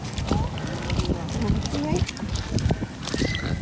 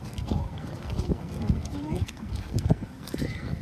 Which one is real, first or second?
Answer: first